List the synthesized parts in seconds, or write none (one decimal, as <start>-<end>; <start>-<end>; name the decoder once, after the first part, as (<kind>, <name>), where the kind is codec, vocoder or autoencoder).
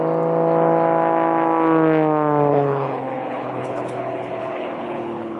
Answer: 2.5-5.4 (codec, HILCodec)